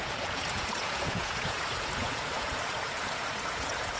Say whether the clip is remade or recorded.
remade